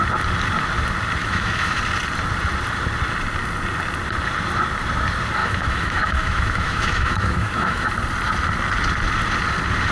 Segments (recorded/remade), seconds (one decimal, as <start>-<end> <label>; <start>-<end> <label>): 0.0-1.2 recorded; 1.2-1.8 remade; 1.8-5.4 recorded; 5.4-7.9 remade; 7.9-9.9 recorded